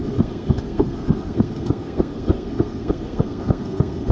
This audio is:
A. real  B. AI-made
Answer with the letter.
B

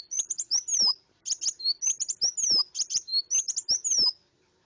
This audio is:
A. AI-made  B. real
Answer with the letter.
B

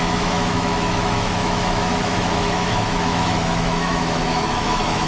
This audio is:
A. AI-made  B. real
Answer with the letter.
A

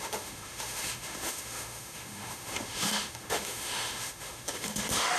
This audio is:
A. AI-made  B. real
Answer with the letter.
A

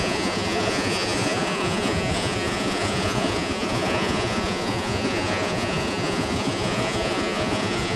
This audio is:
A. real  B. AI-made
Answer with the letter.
B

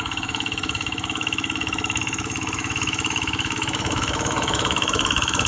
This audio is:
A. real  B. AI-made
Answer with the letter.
B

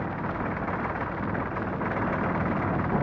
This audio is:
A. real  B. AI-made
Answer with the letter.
A